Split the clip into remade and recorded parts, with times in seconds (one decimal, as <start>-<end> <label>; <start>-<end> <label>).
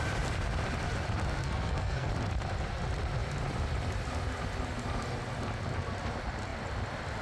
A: 0.0-1.4 recorded; 1.4-2.1 remade; 2.1-7.2 recorded